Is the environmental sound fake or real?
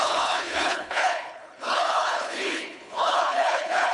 fake